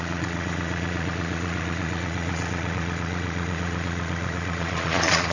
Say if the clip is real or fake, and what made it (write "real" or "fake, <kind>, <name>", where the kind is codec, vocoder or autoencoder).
fake, vocoder, Vocos